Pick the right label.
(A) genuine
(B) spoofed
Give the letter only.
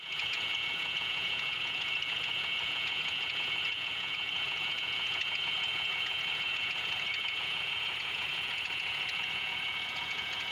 B